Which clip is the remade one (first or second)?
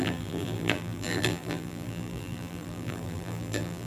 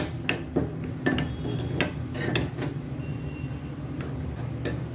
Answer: first